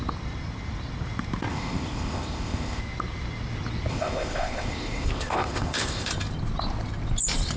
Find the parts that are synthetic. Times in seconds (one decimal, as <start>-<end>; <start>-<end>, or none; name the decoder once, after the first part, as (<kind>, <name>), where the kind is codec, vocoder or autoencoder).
1.5-2.8 (codec, ZipCodec); 3.9-6.1